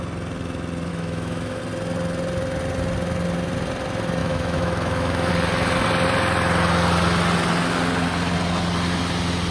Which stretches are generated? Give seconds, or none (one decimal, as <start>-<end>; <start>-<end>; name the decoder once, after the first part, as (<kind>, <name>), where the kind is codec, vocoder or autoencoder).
0.9-1.6 (autoencoder, DAC-VAE); 4.2-5.3